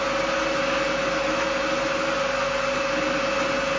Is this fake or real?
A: real